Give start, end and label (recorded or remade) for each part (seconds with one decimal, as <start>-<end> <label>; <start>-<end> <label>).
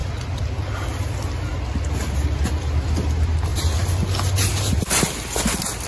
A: 0.0-5.9 recorded